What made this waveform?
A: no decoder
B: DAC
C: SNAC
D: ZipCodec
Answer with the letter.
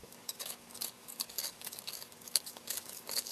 B